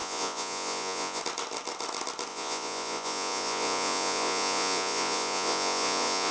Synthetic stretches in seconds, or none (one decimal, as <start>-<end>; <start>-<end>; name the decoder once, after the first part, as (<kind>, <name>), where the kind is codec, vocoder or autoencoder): 0.0-1.2 (vocoder, Vocos); 2.3-6.3